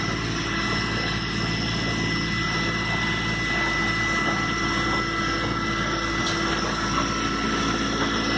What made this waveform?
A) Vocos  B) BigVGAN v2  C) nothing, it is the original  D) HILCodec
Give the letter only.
C